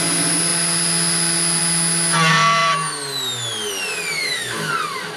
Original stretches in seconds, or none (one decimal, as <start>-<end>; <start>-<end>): 0.0-4.2; 4.7-5.2

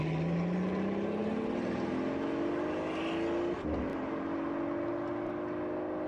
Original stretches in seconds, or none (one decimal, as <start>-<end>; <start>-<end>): 0.0-6.1

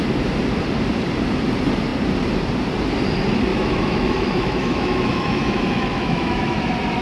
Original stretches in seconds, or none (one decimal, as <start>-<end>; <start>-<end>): 0.0-3.5; 6.6-7.0

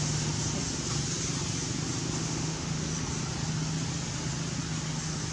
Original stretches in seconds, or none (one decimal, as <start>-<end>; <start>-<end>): 0.0-2.2; 2.8-5.3

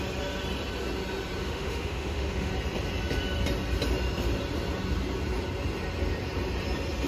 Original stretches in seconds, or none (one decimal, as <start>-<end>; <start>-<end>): 0.0-1.4; 2.5-7.1

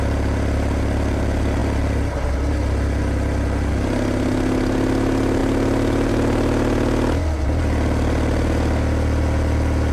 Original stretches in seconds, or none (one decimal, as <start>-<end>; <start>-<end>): 0.0-9.9

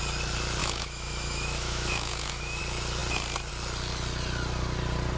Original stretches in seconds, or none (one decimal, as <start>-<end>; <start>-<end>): 0.0-0.6; 2.6-5.2

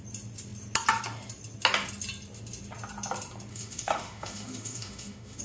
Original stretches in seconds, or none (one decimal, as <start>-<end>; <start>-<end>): 0.0-3.5